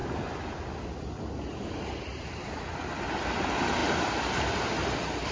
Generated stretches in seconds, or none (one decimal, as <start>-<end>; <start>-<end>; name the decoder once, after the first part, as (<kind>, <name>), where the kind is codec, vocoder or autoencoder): none